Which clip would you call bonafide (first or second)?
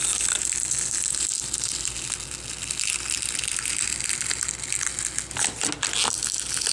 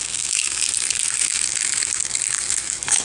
first